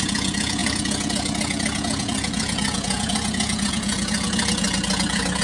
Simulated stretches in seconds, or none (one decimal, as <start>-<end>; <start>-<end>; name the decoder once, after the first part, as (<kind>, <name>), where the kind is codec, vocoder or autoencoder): 0.0-5.4 (vocoder, Vocos)

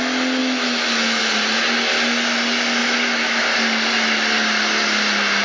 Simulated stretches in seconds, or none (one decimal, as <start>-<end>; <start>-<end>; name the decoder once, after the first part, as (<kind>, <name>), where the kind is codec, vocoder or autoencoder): 0.4-1.2 (autoencoder, DAC-VAE); 2.8-3.4

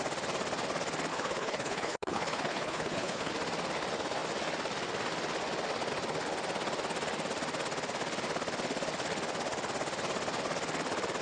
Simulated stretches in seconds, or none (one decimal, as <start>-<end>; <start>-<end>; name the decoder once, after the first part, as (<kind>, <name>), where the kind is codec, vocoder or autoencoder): 1.1-3.3 (codec, HILCodec)

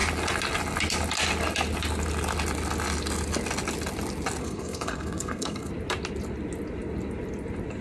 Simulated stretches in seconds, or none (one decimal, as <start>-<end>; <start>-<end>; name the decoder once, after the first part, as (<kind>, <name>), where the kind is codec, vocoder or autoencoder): 4.4-5.7 (codec, SNAC)